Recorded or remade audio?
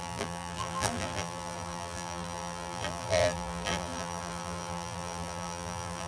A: remade